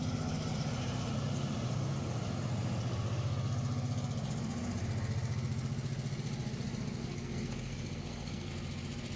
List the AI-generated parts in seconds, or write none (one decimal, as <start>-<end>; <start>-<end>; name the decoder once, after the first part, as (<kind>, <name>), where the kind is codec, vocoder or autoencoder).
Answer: 7.0-8.5 (codec, SNAC)